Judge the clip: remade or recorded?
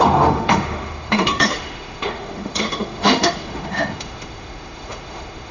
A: remade